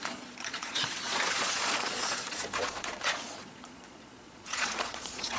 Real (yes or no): no